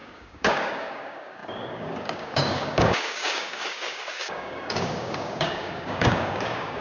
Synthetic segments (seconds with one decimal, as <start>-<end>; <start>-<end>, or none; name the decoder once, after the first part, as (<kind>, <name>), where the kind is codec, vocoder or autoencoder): 0.0-6.8 (codec, DAC)